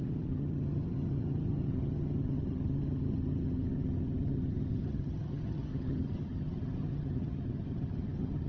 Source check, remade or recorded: remade